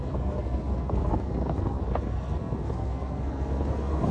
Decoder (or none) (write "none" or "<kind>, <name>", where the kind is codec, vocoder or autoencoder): codec, SNAC